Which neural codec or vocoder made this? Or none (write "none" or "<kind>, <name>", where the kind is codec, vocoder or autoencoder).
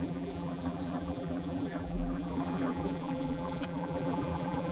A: vocoder, BigVGAN v2